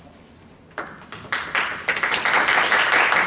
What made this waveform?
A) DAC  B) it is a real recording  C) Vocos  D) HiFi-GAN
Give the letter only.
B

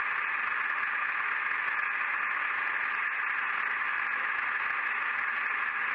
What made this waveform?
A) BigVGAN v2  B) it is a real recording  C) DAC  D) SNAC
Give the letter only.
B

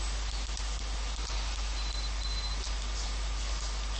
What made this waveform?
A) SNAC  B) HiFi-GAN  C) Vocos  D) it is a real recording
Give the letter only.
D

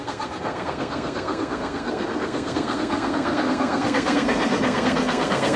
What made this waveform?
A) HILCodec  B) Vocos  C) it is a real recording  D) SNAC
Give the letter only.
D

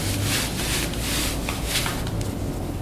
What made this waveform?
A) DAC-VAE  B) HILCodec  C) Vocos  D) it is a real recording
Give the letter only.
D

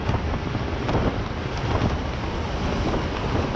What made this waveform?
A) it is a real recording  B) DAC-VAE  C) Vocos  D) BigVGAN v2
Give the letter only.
A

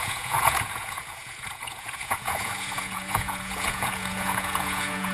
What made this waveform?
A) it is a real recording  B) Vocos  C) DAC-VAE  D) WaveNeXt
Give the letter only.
B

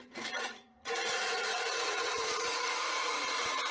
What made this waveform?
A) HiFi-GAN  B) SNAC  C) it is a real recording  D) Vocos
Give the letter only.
D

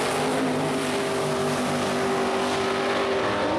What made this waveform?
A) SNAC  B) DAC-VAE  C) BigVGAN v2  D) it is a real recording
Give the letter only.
D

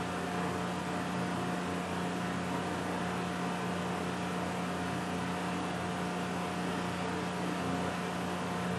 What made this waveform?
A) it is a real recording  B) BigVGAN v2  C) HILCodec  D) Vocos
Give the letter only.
A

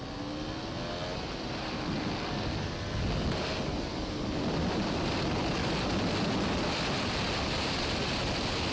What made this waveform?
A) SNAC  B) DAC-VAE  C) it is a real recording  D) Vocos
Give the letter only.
C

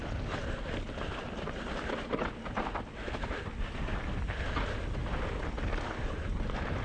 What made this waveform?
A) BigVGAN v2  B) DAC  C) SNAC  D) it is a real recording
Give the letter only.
D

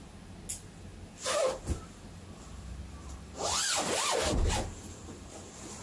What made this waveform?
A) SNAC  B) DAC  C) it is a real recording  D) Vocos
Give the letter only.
C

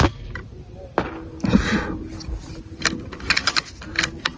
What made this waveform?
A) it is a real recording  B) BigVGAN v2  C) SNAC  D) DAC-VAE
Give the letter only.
A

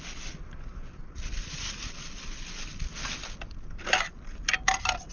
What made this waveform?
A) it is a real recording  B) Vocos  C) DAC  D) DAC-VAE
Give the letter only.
A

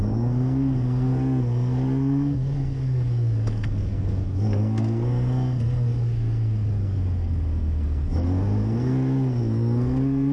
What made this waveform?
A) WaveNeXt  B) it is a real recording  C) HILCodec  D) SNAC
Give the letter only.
D